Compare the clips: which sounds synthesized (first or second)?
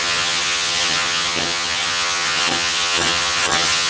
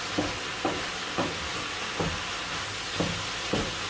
first